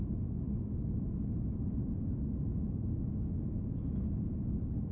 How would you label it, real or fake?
fake